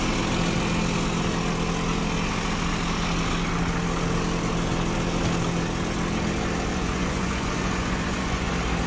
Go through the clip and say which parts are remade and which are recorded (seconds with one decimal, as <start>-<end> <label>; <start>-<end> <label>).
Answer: 0.0-6.7 recorded; 6.7-8.5 remade; 8.5-8.9 recorded